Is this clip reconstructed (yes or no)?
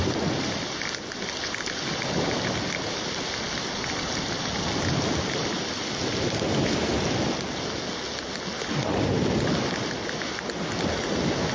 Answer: no